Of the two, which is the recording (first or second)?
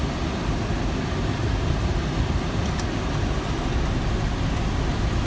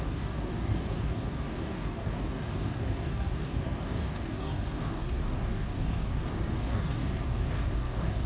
first